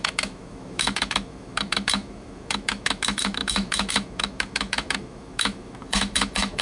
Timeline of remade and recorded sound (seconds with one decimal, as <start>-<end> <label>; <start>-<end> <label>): 0.0-6.6 remade

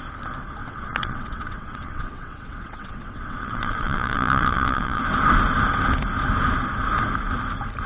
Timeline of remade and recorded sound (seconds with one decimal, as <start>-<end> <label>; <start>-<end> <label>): 0.0-0.6 recorded; 0.6-5.0 remade; 5.0-7.9 recorded

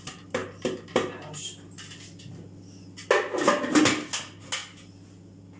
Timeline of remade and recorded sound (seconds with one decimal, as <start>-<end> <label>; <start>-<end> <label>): 0.0-5.6 recorded